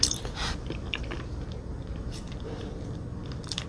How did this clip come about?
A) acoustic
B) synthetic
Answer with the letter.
B